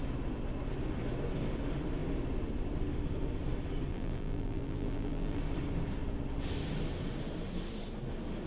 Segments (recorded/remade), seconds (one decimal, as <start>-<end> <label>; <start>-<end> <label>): 0.0-3.9 recorded; 3.9-5.4 remade; 5.4-8.5 recorded